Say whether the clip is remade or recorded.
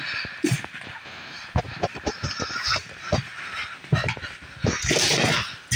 recorded